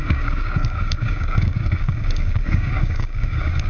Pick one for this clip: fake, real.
fake